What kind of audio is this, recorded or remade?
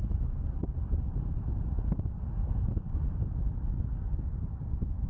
recorded